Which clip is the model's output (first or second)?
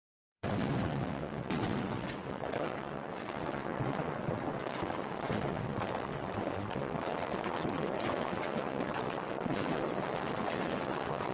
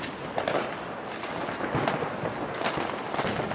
first